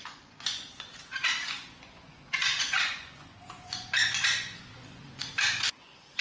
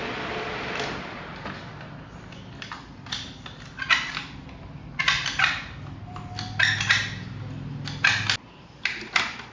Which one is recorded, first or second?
second